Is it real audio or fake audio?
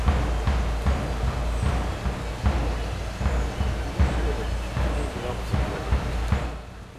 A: real